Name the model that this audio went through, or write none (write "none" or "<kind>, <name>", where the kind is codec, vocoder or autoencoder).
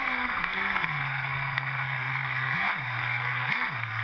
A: codec, SNAC